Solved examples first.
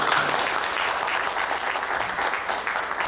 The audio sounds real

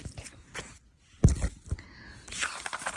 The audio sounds real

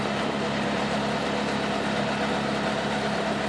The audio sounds real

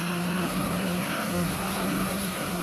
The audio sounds fake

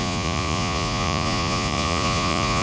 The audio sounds fake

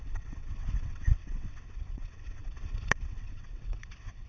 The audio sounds fake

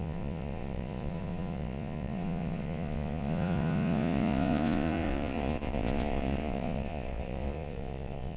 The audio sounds fake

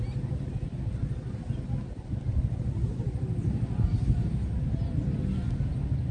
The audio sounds real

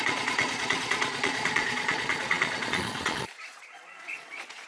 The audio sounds fake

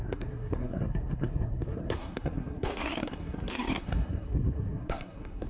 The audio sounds fake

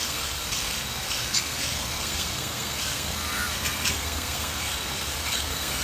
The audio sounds fake